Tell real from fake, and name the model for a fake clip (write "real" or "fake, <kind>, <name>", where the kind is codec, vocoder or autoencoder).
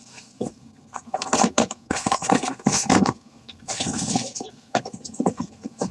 fake, codec, SNAC